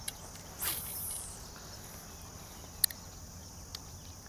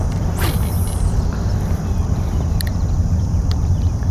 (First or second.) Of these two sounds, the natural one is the first